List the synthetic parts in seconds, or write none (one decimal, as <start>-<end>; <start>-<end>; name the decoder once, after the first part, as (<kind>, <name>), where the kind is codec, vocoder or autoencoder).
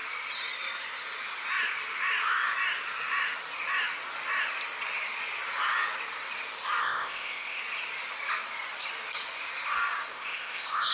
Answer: 6.8-7.6 (codec, ZipCodec); 10.1-10.9